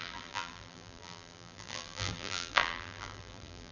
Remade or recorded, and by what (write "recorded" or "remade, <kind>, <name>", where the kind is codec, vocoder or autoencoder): remade, vocoder, BigVGAN v2